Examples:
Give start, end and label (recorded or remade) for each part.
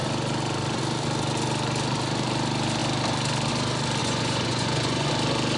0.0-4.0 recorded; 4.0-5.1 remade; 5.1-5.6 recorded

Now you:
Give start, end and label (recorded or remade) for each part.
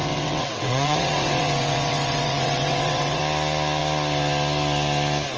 0.0-3.2 remade; 3.2-5.4 recorded